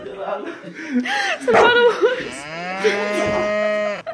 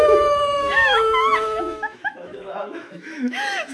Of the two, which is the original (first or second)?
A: first